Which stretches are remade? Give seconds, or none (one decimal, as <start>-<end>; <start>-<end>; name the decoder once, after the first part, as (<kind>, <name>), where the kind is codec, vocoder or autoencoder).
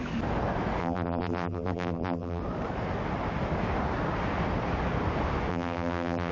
0.8-2.4 (vocoder, BigVGAN v2); 5.5-6.3